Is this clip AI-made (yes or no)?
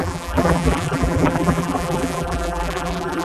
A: yes